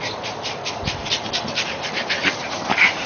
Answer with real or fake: fake